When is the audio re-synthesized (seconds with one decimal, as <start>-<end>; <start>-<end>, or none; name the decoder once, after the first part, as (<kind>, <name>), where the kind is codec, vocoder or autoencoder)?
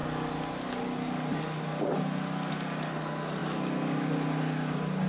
none